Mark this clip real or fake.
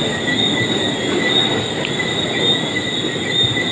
real